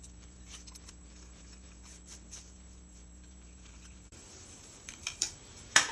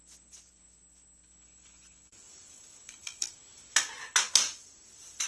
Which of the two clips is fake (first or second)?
first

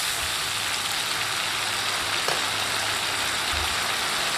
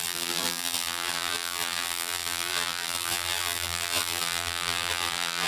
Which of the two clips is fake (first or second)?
second